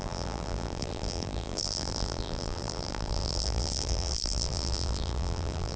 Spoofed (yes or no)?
yes